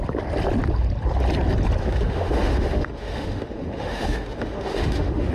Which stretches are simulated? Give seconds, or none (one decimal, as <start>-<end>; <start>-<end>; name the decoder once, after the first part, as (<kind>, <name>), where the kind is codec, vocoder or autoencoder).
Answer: 1.8-5.3 (autoencoder, DAC-VAE)